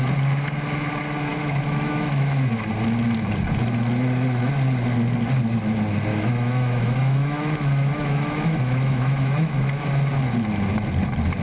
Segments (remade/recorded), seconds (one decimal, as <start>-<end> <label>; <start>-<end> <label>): 0.0-1.3 recorded; 1.3-2.7 remade; 2.7-6.1 recorded; 6.1-9.9 remade; 9.9-11.4 recorded